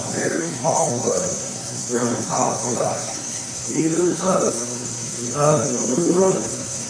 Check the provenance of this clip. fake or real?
fake